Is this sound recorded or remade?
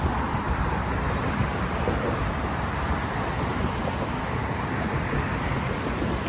recorded